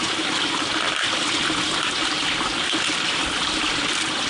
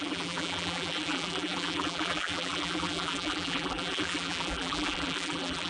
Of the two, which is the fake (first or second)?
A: second